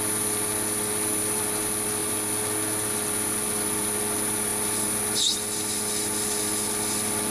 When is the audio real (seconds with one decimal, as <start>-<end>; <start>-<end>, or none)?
0.0-7.3